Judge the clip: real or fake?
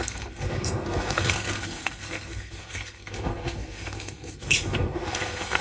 fake